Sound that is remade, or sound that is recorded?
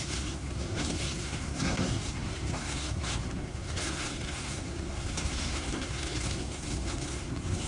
remade